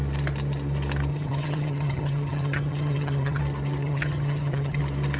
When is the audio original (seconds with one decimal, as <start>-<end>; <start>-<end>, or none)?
0.0-1.1; 3.4-3.8; 4.8-5.2